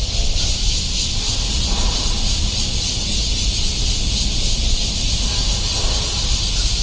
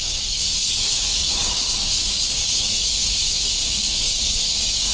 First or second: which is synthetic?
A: second